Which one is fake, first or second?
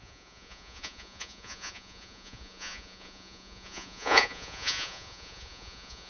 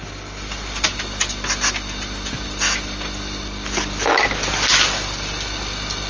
first